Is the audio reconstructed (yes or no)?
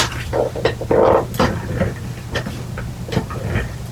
no